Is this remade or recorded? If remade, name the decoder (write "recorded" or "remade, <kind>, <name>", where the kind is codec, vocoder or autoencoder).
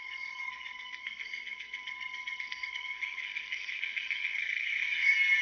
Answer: remade, codec, SNAC